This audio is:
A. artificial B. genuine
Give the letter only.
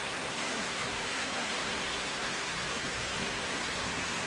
A